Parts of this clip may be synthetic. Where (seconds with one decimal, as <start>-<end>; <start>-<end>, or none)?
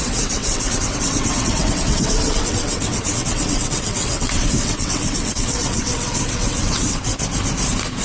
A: 0.0-7.1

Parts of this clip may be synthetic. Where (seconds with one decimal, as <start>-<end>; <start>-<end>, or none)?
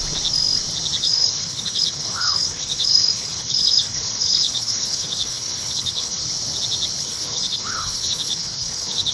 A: 1.0-6.2; 7.0-9.1